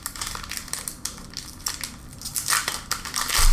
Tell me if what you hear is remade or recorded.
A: recorded